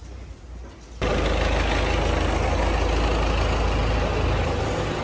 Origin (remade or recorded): recorded